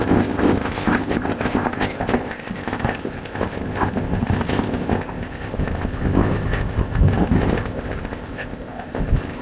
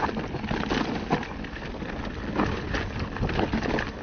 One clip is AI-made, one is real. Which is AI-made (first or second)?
first